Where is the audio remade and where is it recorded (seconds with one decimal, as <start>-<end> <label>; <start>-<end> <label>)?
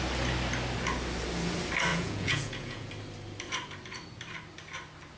0.0-1.9 recorded; 1.9-2.9 remade; 2.9-5.2 recorded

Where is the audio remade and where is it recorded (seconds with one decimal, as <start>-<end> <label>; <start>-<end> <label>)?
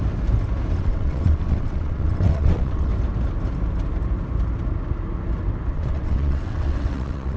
0.0-0.8 recorded; 0.8-2.9 remade; 2.9-5.7 recorded; 5.7-7.4 remade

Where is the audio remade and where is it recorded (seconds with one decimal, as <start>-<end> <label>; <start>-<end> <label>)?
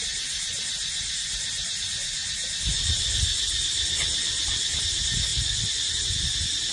0.0-6.7 recorded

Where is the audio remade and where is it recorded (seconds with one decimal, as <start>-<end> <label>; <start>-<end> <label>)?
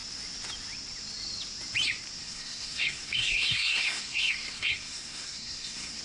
0.0-2.2 recorded; 2.2-6.0 remade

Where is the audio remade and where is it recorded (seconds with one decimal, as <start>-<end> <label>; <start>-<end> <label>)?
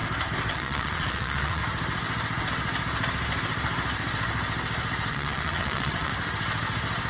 0.0-0.5 recorded; 0.5-1.6 remade; 1.6-5.1 recorded; 5.1-6.1 remade; 6.1-7.1 recorded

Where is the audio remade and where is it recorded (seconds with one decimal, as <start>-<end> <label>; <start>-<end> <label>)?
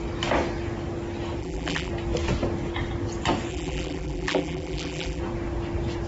0.0-1.4 recorded; 1.4-1.9 remade; 1.9-3.5 recorded; 3.5-5.2 remade; 5.2-6.1 recorded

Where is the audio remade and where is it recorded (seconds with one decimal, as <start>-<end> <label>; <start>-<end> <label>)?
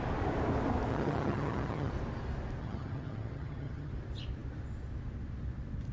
0.0-0.9 recorded; 0.9-1.9 remade; 1.9-2.6 recorded; 2.6-3.9 remade; 3.9-5.9 recorded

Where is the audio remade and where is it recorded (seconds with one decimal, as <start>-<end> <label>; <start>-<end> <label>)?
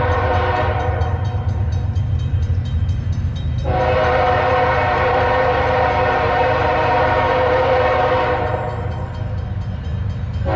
0.0-9.9 remade; 9.9-10.6 recorded